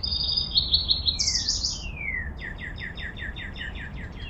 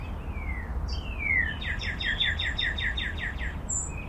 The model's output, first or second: first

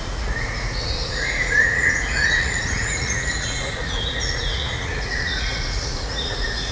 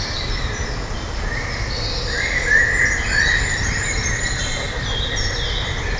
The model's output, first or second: first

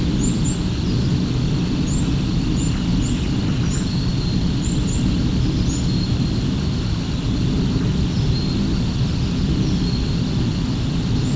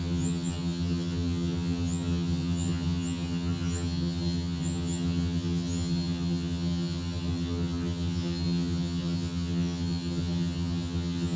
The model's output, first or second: second